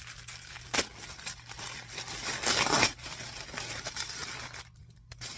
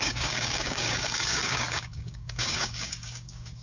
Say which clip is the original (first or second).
first